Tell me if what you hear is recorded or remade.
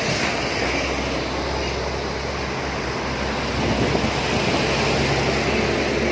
recorded